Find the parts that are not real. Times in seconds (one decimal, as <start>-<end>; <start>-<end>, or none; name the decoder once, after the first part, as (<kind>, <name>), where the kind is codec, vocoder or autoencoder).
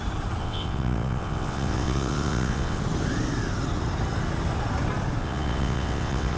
0.4-2.8 (vocoder, WaveNeXt); 5.2-6.4